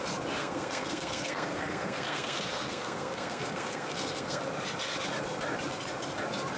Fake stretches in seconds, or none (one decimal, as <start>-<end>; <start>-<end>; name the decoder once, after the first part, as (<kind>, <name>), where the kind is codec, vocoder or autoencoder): 0.4-4.4 (codec, SNAC)